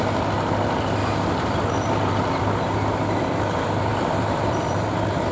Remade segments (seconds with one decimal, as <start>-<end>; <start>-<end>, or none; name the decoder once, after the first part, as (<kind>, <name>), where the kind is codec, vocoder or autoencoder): 1.0-2.4 (vocoder, BigVGAN v2); 3.9-5.3